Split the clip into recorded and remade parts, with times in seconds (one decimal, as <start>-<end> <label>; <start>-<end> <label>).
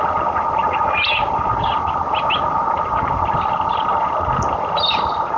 0.0-5.4 recorded